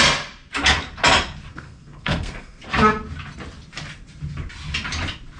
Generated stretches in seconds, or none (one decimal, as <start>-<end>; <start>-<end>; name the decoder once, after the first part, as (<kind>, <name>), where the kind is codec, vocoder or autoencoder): 1.5-2.6 (codec, SNAC)